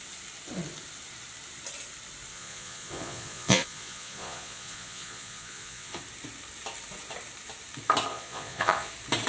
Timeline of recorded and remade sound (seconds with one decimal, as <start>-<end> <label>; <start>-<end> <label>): 0.0-2.3 recorded; 2.3-6.0 remade; 6.0-8.1 recorded; 8.1-8.9 remade; 8.9-9.3 recorded

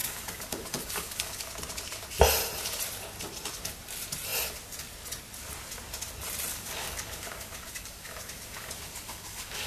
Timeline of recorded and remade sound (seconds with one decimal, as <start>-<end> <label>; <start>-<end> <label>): 0.0-1.5 remade; 1.5-6.5 recorded; 6.5-9.7 remade

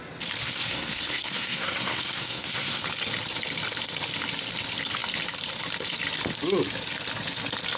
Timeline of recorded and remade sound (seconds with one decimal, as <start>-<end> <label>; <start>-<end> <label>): 0.0-0.4 recorded; 0.4-2.8 remade; 2.8-7.8 recorded

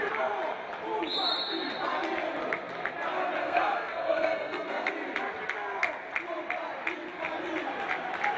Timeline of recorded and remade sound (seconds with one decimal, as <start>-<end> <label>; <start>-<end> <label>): 0.0-3.4 recorded; 3.4-4.9 remade; 4.9-8.4 recorded

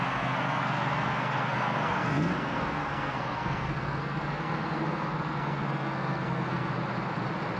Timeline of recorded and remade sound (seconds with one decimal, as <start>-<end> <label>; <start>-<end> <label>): 0.0-6.7 remade; 6.7-7.6 recorded

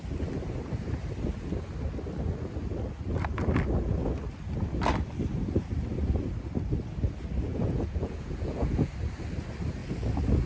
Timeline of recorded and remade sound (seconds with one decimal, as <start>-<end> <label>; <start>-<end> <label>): 0.0-7.5 recorded; 7.5-8.9 remade; 8.9-10.5 recorded

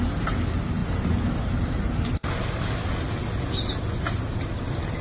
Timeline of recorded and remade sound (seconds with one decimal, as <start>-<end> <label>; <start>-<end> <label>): 0.0-5.0 recorded

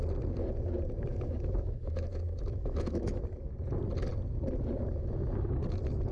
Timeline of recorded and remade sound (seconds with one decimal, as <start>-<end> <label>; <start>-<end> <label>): 0.0-1.1 recorded; 1.1-3.2 remade; 3.2-6.1 recorded